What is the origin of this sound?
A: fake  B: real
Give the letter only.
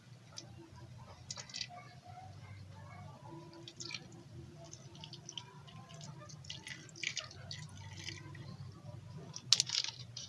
B